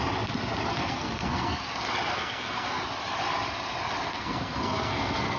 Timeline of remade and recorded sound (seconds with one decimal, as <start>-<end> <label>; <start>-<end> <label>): 0.0-0.7 recorded; 0.7-1.6 remade; 1.6-2.1 recorded; 2.1-2.8 remade; 2.8-4.1 recorded; 4.1-5.4 remade